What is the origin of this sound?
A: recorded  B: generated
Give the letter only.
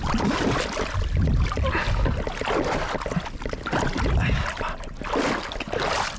A